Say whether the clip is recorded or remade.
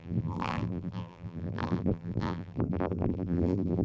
remade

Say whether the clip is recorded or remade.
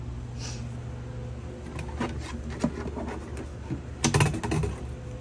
recorded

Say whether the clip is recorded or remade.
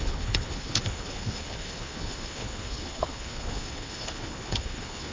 remade